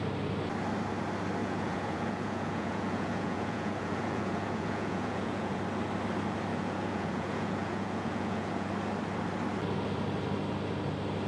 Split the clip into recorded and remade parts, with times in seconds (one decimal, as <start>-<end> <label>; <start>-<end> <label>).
0.0-1.4 recorded; 1.4-5.6 remade; 5.6-6.5 recorded; 6.5-8.7 remade; 8.7-11.3 recorded

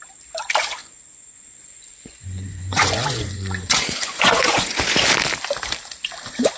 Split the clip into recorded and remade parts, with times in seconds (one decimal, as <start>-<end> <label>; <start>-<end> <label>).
0.0-0.8 recorded; 0.8-4.8 remade; 4.8-6.6 recorded

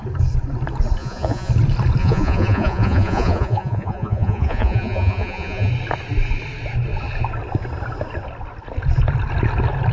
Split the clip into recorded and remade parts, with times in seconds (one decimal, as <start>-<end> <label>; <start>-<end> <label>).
0.0-1.0 recorded; 1.0-1.5 remade; 1.5-2.0 recorded; 2.0-5.7 remade; 5.7-9.9 recorded

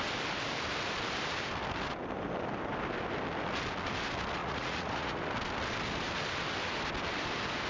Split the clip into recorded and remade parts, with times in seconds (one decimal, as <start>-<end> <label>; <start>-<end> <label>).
0.0-4.4 recorded; 4.4-5.2 remade; 5.2-7.7 recorded

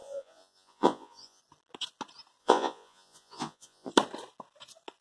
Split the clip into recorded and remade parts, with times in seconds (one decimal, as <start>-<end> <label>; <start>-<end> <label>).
0.0-1.4 remade; 1.4-2.4 recorded; 2.4-3.9 remade; 3.9-5.0 recorded

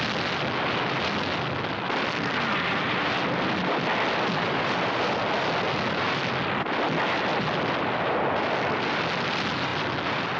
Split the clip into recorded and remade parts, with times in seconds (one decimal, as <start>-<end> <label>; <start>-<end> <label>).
0.0-10.4 recorded